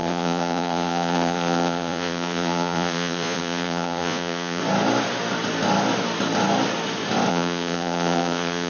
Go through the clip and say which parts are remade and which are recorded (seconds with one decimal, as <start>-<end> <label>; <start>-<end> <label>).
0.0-4.6 remade; 4.6-7.3 recorded; 7.3-8.7 remade